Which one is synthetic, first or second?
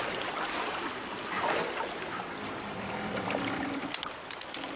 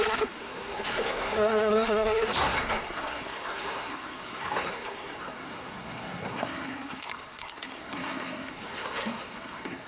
second